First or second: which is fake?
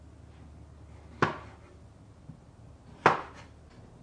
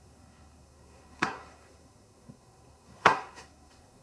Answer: second